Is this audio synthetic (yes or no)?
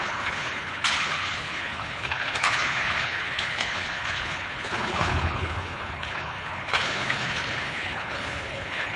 yes